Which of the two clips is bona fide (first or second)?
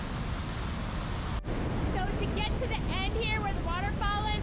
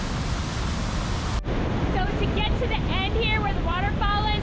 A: first